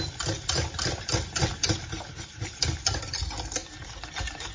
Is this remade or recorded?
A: recorded